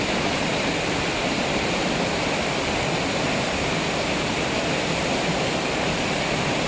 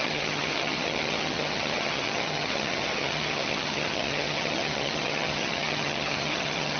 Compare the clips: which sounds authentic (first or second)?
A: first